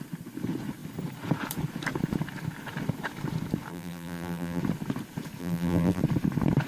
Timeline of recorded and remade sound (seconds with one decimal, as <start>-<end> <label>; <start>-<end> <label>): 0.0-3.7 recorded; 3.7-4.6 remade; 4.6-5.4 recorded; 5.4-6.0 remade; 6.0-6.7 recorded